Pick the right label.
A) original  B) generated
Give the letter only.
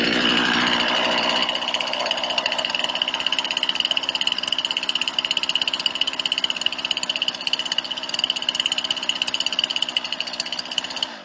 A